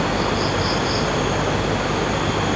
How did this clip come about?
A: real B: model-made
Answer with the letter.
A